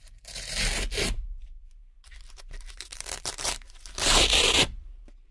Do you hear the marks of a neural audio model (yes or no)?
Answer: yes